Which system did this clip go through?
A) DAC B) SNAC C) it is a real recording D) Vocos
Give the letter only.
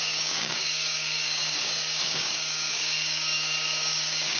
A